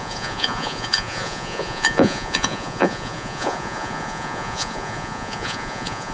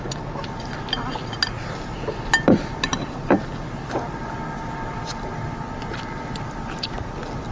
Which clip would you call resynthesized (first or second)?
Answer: first